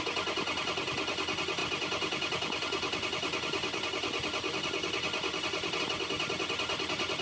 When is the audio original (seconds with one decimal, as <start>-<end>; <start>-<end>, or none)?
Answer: 0.0-1.6; 5.8-7.2